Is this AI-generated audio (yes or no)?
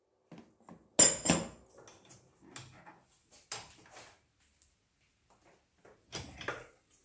no